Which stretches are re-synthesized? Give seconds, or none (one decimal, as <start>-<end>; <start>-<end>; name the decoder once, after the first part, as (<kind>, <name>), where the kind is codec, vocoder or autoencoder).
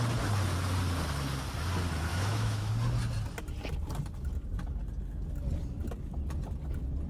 2.1-2.7 (autoencoder, DAC-VAE)